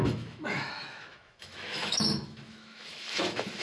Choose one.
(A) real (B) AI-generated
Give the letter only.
B